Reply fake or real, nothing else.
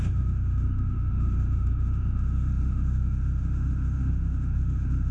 fake